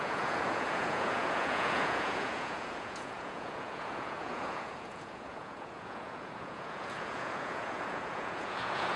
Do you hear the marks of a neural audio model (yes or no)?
yes